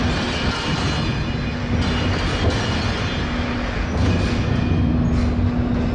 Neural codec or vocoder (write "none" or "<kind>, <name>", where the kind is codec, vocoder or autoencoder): none